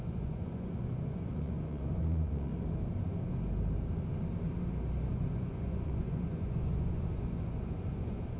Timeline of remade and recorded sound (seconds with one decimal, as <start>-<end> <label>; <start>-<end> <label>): 0.0-2.5 remade; 2.5-5.1 recorded; 5.1-8.4 remade